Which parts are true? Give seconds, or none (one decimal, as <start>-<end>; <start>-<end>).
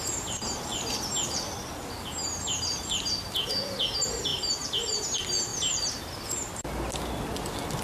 0.0-4.3; 5.0-5.5; 6.0-7.8